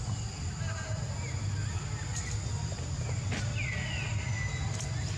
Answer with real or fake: real